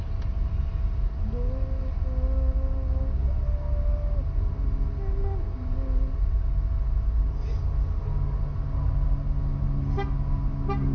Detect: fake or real real